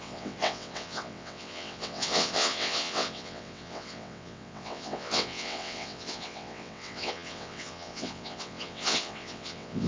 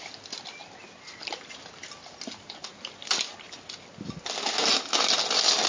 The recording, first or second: second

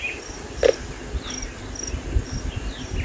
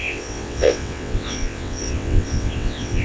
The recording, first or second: first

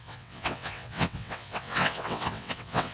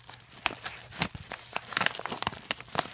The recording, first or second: second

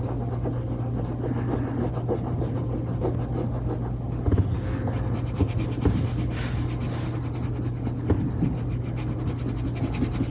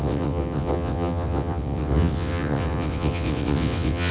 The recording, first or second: first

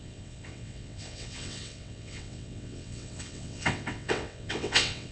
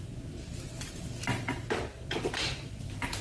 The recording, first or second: second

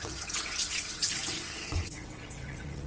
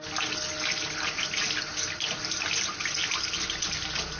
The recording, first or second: second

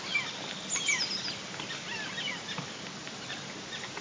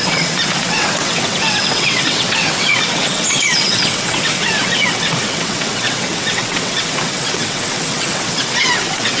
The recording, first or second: first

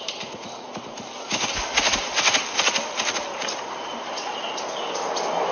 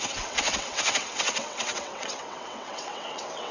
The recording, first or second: first